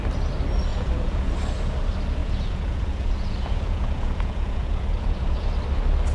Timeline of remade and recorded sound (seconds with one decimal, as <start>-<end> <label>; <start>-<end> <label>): 0.0-0.7 recorded; 0.7-1.3 remade; 1.3-2.2 recorded; 2.2-5.5 remade; 5.5-6.1 recorded